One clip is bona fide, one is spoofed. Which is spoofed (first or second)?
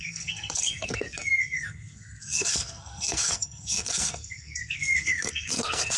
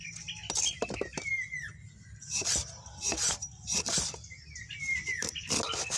first